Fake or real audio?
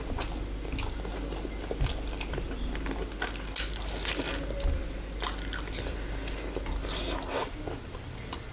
real